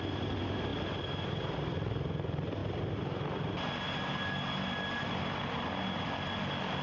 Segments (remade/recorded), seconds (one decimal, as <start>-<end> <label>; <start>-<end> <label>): 0.0-6.8 recorded